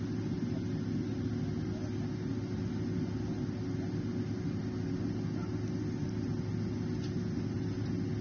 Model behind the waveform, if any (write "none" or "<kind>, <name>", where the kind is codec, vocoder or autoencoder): none